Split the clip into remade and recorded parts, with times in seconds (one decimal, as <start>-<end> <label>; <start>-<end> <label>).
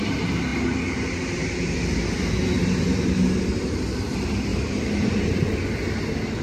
0.0-4.5 recorded; 4.5-5.2 remade; 5.2-6.4 recorded